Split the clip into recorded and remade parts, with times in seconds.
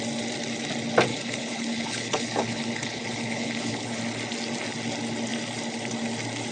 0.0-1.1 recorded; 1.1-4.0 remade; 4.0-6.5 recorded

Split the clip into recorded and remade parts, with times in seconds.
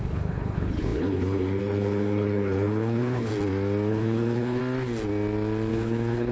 0.0-3.3 remade; 3.3-3.9 recorded; 3.9-4.6 remade; 4.6-5.7 recorded; 5.7-6.3 remade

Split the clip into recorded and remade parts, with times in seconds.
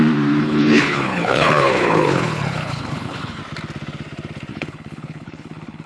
0.0-0.4 recorded; 0.4-3.4 remade; 3.4-4.5 recorded; 4.5-5.9 remade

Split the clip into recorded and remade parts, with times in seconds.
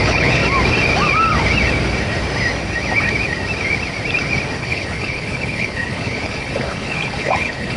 0.0-0.4 remade; 0.4-4.6 recorded; 4.6-7.8 remade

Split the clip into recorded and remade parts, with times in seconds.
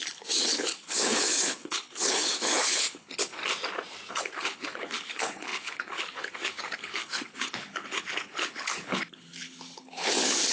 0.0-3.4 remade; 3.4-4.1 recorded; 4.1-10.5 remade